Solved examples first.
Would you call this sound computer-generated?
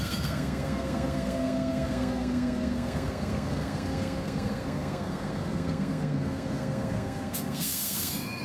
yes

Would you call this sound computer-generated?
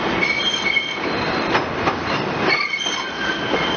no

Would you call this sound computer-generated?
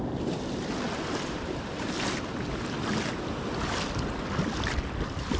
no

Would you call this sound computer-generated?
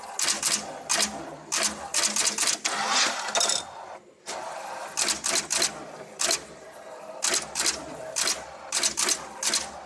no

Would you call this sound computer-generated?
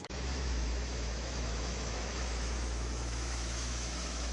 yes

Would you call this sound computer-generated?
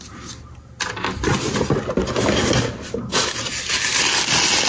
no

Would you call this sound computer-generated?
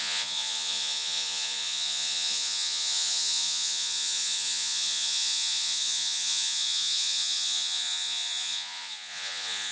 yes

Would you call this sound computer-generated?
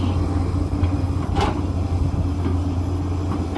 no